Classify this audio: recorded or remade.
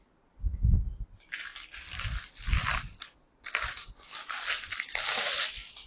recorded